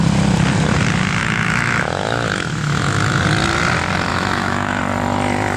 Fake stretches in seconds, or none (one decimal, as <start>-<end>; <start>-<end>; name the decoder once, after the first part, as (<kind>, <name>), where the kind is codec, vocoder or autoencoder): 1.2-3.2 (autoencoder, DAC-VAE); 4.1-4.8

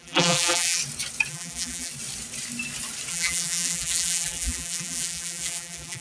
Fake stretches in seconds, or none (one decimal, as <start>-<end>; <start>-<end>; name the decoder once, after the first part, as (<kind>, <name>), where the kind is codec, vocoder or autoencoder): 0.0-0.8 (vocoder, BigVGAN v2); 1.3-1.9; 3.1-6.0

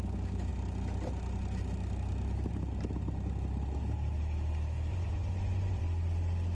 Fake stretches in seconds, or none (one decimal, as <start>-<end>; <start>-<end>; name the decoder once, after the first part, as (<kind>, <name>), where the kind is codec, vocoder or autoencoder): 4.9-5.8 (vocoder, Vocos)

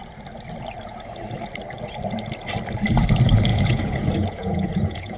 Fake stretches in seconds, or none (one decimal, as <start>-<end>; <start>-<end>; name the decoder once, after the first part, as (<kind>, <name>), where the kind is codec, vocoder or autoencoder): 3.5-5.2 (vocoder, Vocos)

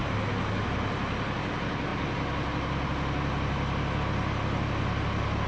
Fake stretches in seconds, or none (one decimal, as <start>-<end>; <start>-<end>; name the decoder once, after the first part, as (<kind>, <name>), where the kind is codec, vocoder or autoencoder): none